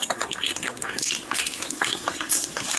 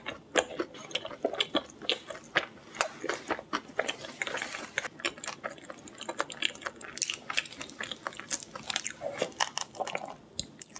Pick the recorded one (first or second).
second